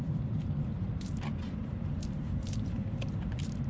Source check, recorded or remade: remade